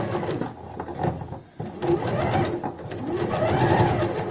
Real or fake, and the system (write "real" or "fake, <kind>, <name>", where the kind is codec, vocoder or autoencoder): real